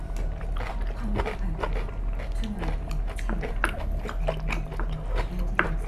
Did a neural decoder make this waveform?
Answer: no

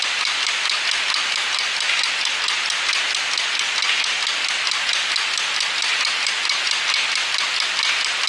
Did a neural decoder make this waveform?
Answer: no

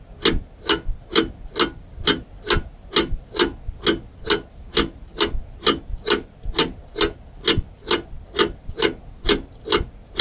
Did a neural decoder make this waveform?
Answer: no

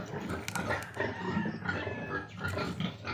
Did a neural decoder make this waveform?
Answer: no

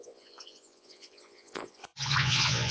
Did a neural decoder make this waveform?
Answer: yes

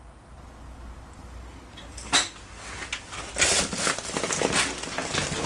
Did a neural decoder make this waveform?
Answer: no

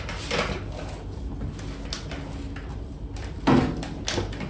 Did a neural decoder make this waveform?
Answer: no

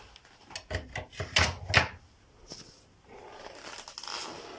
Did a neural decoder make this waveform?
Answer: no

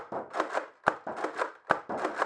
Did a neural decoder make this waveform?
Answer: no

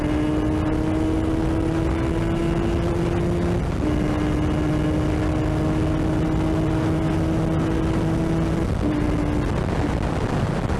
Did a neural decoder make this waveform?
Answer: no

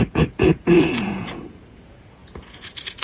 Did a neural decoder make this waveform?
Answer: yes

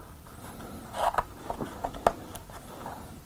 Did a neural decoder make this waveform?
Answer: no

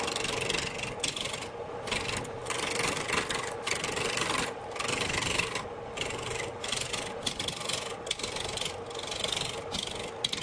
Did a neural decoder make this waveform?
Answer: no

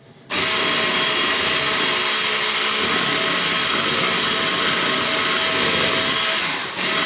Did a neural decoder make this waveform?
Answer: no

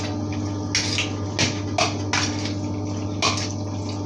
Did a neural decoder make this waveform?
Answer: no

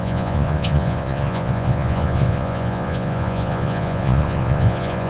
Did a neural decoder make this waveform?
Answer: yes